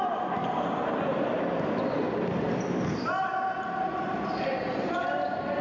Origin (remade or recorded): remade